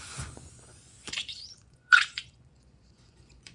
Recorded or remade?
remade